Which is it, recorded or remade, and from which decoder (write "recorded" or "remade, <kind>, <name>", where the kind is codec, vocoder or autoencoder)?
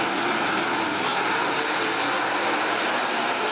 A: recorded